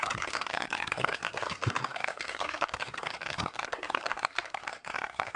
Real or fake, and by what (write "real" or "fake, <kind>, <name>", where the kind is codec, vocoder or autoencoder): fake, codec, SNAC